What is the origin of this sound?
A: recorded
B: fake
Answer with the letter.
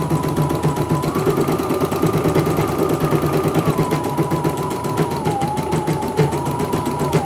A